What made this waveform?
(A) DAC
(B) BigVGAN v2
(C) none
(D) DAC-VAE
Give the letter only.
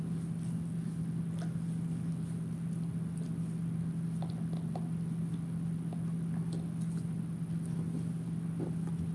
C